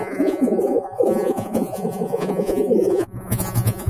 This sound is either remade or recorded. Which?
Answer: remade